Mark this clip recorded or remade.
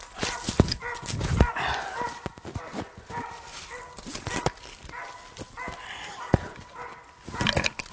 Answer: recorded